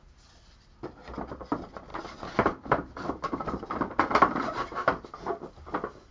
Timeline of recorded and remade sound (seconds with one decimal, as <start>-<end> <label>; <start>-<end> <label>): 0.0-6.1 recorded